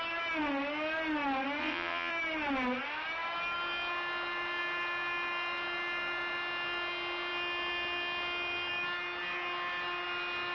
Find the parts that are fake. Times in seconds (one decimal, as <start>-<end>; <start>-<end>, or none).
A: 1.6-2.1